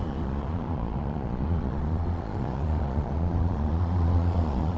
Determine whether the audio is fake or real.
fake